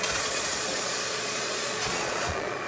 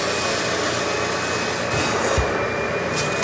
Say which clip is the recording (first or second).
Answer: second